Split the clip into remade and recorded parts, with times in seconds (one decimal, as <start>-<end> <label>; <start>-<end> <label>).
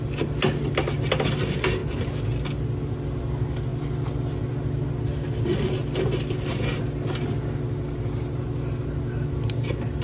0.0-10.0 recorded